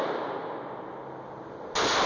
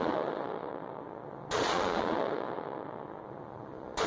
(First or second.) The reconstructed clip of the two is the second